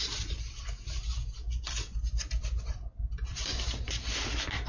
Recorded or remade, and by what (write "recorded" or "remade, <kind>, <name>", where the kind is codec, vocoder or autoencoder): recorded